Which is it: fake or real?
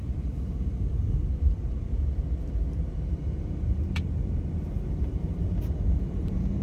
fake